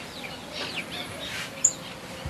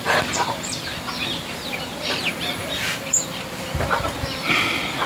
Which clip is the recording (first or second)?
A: first